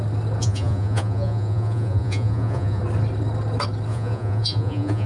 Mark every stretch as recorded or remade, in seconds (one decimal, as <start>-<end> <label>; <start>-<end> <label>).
0.0-0.4 recorded; 0.4-2.8 remade; 2.8-3.9 recorded; 3.9-5.1 remade